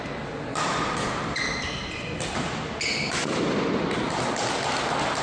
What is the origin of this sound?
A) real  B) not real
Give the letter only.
A